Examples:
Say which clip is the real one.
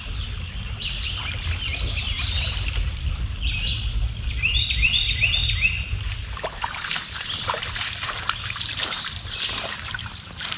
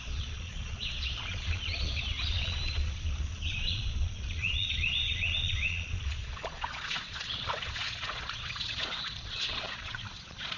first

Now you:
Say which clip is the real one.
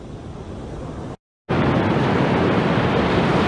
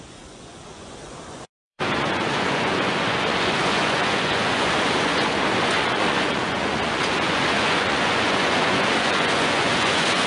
first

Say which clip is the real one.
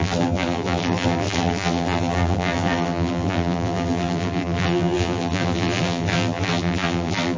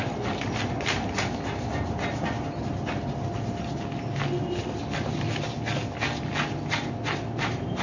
second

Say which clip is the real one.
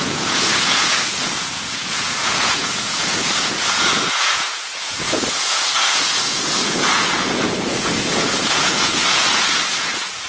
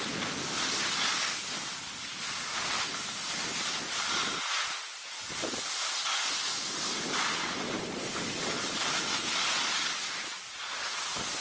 second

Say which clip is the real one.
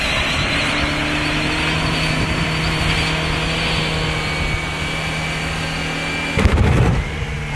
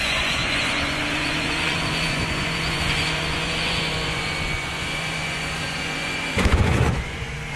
first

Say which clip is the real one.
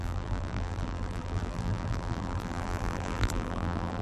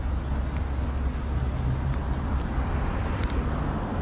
second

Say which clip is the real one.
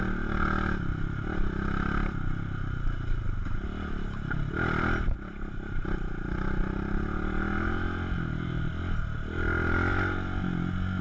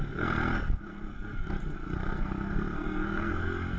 first